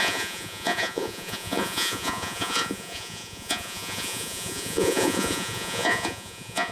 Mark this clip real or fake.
fake